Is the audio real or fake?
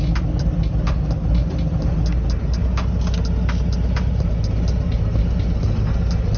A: real